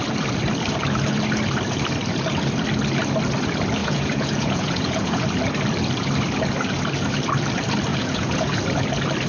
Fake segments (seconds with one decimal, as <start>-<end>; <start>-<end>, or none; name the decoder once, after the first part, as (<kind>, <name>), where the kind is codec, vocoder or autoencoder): 3.8-5.2 (vocoder, Vocos); 7.9-8.6

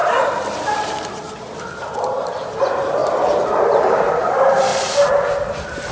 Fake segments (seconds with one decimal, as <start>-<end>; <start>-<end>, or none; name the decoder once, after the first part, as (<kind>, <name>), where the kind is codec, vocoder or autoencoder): 1.7-3.0 (vocoder, BigVGAN v2); 3.6-4.7; 5.3-5.9